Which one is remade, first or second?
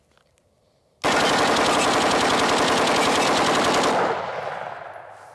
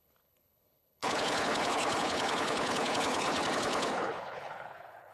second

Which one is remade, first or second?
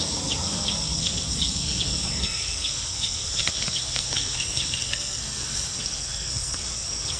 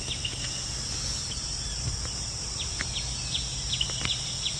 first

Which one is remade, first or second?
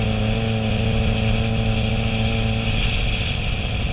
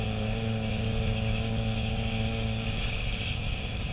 second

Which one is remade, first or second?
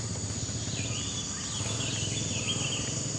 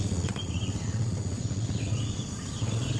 second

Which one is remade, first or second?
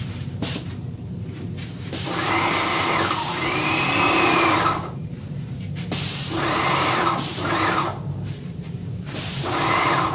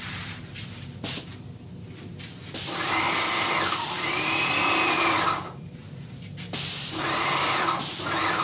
first